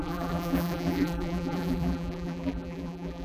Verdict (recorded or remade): remade